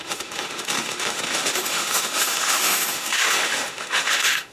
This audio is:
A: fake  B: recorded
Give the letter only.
A